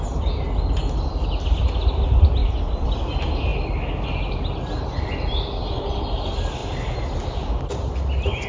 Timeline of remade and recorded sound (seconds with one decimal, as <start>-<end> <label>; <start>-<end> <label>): 0.0-2.4 recorded; 2.4-3.0 remade; 3.0-3.5 recorded; 3.5-4.1 remade; 4.1-5.3 recorded; 5.3-6.0 remade; 6.0-8.5 recorded